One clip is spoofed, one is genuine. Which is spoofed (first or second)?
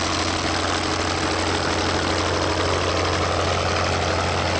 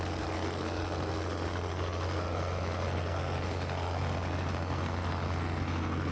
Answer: second